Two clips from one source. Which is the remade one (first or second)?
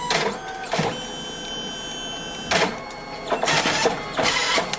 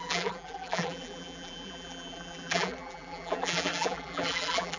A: second